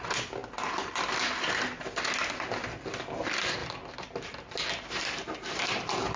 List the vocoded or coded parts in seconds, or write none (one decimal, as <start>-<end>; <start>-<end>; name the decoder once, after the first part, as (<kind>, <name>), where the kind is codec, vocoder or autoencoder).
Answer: none